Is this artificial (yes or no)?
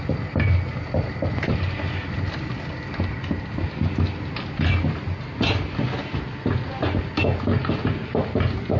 no